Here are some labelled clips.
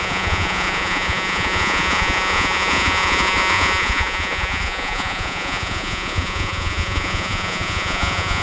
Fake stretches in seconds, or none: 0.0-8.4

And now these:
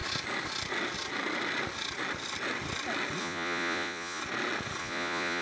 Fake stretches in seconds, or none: 3.2-4.2; 4.8-5.4

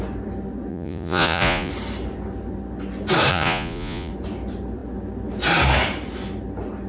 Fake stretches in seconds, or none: 0.7-1.7; 3.3-4.1